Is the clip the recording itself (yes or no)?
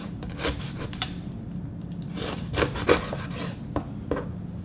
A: yes